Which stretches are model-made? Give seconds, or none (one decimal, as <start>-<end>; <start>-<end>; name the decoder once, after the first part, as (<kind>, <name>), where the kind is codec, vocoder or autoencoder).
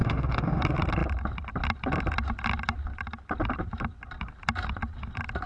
0.0-0.6 (autoencoder, DAC-VAE)